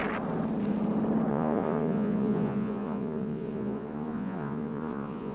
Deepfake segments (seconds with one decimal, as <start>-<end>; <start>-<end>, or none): 1.3-5.3